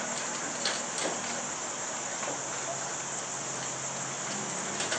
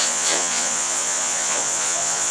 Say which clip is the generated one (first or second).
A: second